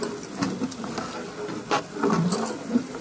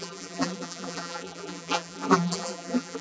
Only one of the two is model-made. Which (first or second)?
second